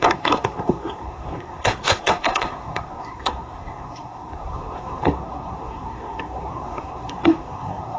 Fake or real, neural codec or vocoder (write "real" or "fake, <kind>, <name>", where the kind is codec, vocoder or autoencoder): fake, codec, SNAC